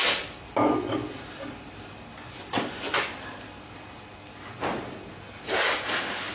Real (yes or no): yes